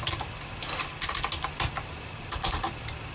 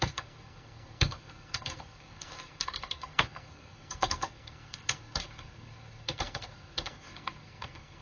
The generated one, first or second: second